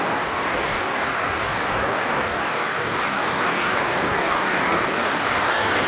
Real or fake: fake